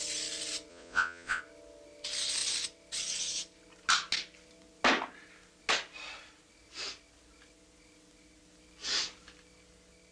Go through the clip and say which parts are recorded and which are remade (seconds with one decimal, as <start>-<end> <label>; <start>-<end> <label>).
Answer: 0.0-0.7 recorded; 0.7-1.4 remade; 1.4-10.1 recorded